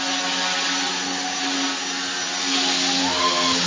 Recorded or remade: recorded